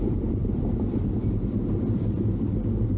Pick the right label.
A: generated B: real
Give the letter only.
B